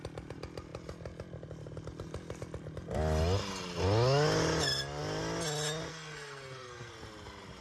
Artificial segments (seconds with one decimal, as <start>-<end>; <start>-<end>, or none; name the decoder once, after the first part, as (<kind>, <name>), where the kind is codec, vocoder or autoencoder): 5.9-6.9 (codec, SNAC)